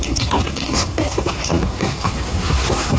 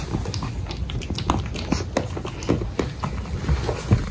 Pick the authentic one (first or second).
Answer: second